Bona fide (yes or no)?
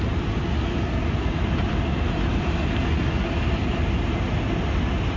yes